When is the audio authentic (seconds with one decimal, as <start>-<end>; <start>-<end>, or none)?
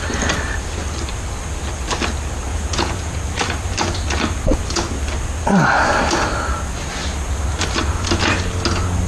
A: 0.0-2.5; 3.2-9.1